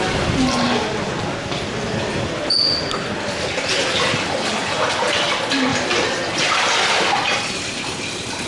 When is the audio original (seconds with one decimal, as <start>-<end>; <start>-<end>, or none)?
0.0-8.5